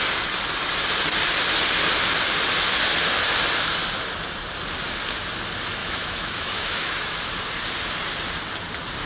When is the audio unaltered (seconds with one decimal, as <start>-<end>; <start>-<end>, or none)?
0.0-5.8; 7.2-9.1